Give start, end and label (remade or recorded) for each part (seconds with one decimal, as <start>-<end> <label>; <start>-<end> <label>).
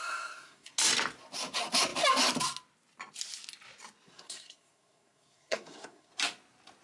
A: 0.0-0.7 remade; 0.7-4.1 recorded; 4.1-6.1 remade; 6.1-6.8 recorded